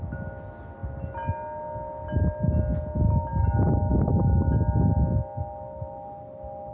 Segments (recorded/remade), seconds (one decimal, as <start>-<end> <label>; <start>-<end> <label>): 0.0-6.7 recorded